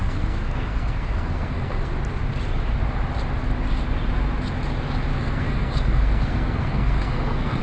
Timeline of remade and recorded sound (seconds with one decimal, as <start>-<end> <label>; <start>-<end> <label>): 0.0-1.9 remade; 1.9-5.1 recorded; 5.1-7.6 remade